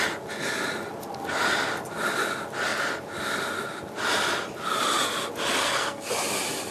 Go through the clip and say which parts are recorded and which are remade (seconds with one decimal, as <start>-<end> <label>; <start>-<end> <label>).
0.0-5.6 recorded; 5.6-6.1 remade; 6.1-6.7 recorded